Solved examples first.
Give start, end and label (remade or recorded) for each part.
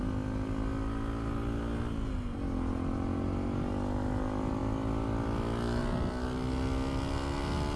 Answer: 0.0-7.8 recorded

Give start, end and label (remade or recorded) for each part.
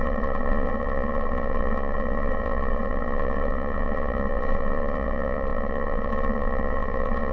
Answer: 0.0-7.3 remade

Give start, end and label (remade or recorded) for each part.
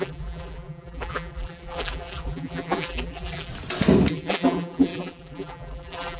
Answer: 0.0-3.5 remade; 3.5-4.1 recorded; 4.1-6.2 remade